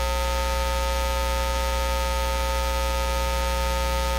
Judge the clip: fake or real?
real